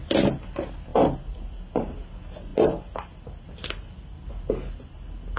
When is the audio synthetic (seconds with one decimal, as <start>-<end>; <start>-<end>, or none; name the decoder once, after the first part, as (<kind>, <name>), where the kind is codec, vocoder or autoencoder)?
none